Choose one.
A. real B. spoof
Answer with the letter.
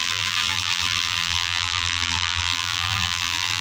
B